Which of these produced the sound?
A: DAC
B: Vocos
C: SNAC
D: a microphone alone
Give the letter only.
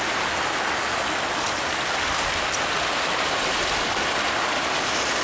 D